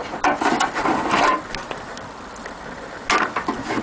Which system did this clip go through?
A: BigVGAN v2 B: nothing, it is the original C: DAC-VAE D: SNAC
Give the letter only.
B